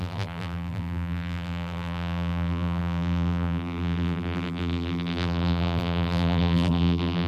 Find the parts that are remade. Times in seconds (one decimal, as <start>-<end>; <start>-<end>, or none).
0.0-7.3